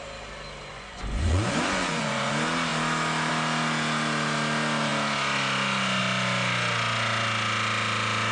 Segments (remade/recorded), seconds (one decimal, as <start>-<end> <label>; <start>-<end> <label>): 0.0-0.7 recorded; 0.7-2.3 remade; 2.3-8.3 recorded